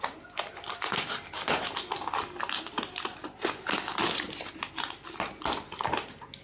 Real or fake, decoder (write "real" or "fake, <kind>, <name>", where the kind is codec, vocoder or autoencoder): real